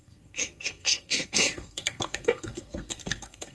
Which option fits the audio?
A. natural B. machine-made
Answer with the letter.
B